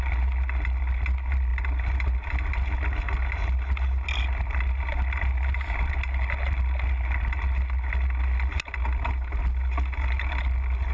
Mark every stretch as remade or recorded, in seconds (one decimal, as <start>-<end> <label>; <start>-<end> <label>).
0.0-10.9 recorded